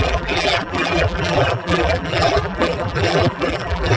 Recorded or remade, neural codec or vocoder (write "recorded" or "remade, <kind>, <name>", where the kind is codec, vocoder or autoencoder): remade, vocoder, BigVGAN v2